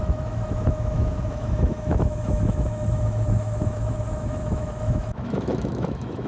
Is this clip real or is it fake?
fake